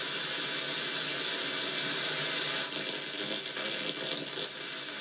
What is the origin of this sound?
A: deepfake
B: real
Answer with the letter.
B